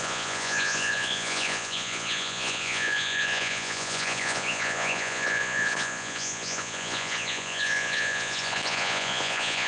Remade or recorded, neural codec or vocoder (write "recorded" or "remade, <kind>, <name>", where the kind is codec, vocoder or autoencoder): remade, vocoder, Vocos